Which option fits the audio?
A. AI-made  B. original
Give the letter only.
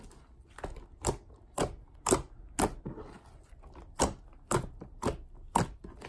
B